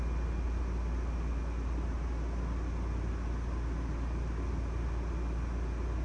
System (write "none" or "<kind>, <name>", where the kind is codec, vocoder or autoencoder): none